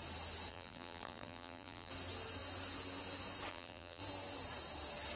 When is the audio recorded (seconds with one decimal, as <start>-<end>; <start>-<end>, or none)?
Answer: 0.0-0.5; 1.9-3.5; 4.0-5.2